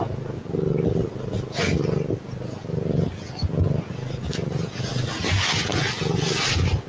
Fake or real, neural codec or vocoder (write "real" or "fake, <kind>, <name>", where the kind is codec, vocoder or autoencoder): real